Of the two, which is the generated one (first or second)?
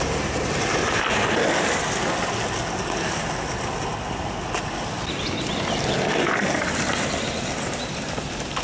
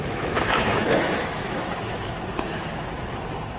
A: second